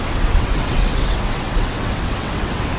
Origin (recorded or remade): remade